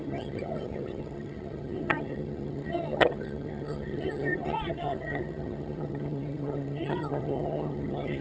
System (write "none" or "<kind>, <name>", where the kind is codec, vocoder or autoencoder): vocoder, HiFi-GAN